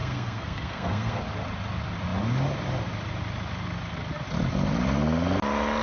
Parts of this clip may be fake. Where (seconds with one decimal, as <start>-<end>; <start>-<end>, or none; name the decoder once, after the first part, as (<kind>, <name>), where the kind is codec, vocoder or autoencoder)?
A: 0.0-1.2 (codec, SNAC)